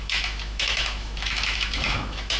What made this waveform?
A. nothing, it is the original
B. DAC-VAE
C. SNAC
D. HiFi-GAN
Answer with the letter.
B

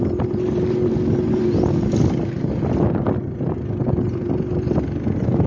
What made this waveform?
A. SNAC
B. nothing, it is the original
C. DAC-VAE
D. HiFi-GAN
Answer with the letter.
B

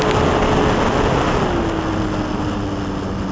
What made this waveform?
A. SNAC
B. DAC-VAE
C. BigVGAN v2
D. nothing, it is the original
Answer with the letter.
D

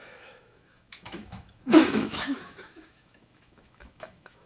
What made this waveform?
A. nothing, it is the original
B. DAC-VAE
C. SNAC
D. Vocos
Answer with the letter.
B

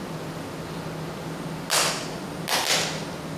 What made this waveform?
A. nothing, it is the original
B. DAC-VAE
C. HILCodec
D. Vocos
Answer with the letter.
A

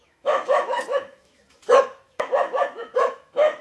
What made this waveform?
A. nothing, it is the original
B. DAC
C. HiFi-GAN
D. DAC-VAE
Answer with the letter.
D